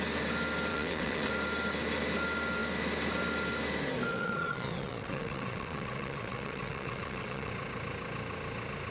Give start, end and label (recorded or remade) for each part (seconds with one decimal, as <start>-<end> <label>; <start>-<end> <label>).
0.0-0.7 recorded; 0.7-1.3 remade; 1.3-4.1 recorded; 4.1-7.5 remade; 7.5-8.9 recorded